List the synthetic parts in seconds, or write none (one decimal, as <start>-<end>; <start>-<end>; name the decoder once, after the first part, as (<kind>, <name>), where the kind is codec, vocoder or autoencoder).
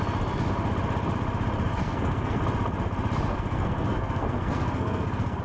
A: 1.7-2.4 (codec, SNAC); 3.3-5.4